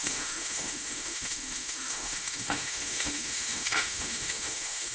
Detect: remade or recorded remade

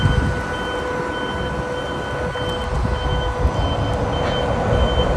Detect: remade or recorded recorded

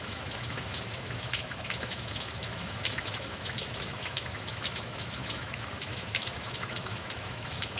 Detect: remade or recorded remade